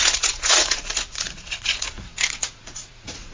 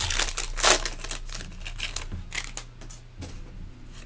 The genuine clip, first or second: second